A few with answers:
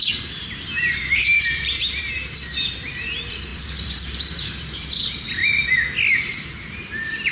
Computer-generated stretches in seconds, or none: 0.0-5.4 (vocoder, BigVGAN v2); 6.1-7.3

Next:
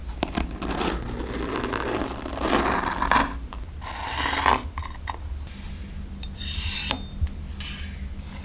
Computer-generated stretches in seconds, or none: 0.0-0.6 (vocoder, BigVGAN v2)